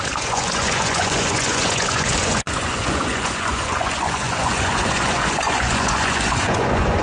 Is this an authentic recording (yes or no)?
no